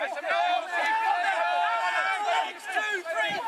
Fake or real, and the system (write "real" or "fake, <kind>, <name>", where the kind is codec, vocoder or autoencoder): real